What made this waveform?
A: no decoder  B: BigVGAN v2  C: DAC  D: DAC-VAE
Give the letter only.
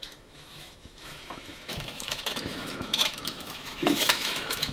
D